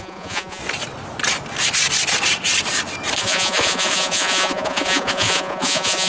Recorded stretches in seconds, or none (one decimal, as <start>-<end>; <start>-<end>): 0.6-3.2